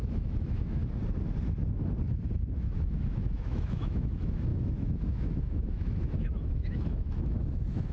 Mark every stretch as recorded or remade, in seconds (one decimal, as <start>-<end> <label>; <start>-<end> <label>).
0.0-0.8 remade; 0.8-2.5 recorded; 2.5-7.9 remade